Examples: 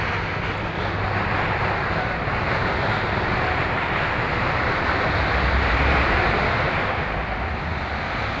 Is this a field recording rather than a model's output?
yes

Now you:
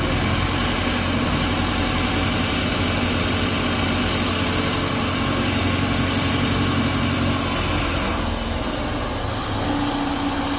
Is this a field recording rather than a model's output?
yes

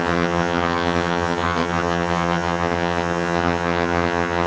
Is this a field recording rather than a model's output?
no